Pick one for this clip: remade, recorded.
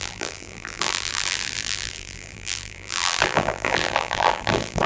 remade